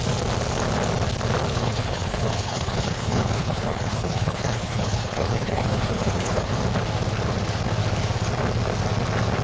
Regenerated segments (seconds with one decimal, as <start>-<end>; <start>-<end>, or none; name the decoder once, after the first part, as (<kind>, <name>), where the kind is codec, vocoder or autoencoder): 1.5-6.5 (codec, HILCodec)